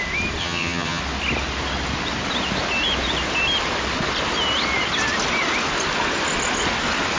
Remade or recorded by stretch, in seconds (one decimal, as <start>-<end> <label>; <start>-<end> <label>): 0.0-0.4 recorded; 0.4-1.0 remade; 1.0-7.2 recorded